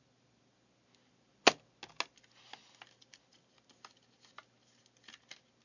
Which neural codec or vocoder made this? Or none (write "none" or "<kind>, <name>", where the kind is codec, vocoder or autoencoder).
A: none